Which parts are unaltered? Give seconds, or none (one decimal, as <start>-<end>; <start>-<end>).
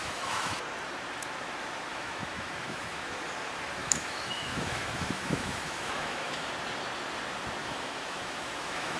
0.6-1.9; 3.2-3.8; 6.5-7.6